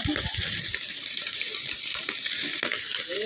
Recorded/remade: remade